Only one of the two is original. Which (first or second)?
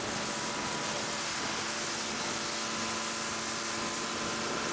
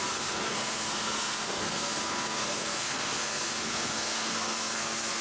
first